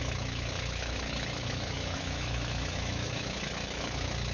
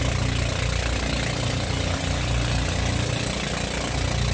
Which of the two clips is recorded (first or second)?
second